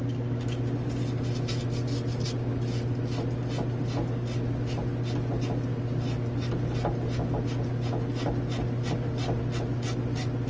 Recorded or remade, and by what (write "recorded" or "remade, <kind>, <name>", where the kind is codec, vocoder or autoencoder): recorded